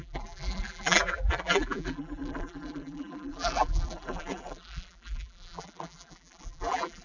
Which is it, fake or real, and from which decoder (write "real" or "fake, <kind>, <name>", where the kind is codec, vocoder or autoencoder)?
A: fake, vocoder, BigVGAN v2